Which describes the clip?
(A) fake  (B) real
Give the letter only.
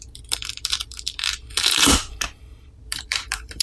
A